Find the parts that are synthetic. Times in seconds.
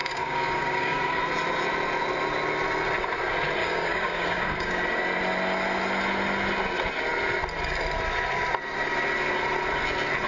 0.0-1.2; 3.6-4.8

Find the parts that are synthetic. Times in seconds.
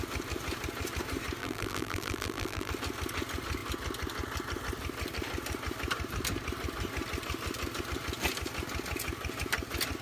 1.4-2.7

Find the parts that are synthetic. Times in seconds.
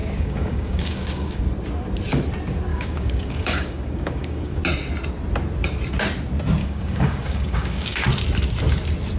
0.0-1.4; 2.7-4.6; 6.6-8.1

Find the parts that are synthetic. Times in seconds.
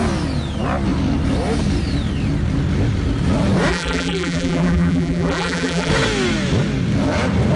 3.7-5.9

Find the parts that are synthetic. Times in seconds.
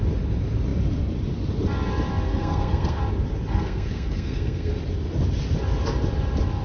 2.3-3.0; 3.5-4.7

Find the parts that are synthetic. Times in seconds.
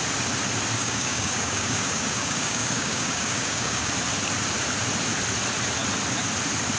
0.8-3.9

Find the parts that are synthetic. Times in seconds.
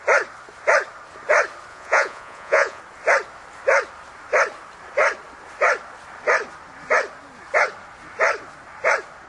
1.7-2.8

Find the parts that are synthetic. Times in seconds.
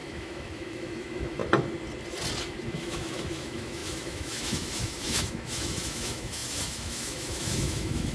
0.0-1.4; 2.5-8.1